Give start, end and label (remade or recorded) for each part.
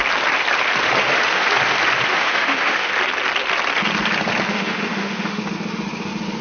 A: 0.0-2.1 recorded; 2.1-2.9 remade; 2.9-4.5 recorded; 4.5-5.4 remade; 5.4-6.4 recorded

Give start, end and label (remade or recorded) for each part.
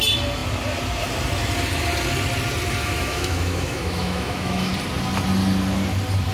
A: 0.0-2.8 recorded; 2.8-4.7 remade; 4.7-6.3 recorded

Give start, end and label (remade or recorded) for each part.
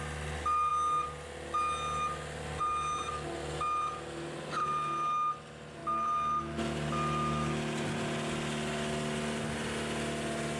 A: 0.0-10.6 recorded